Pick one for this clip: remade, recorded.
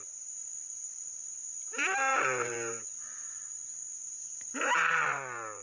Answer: remade